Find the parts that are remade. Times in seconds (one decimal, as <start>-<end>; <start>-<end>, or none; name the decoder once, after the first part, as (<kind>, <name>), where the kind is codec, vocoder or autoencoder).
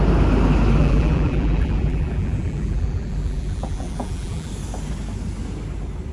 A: 0.8-4.5 (vocoder, BigVGAN v2)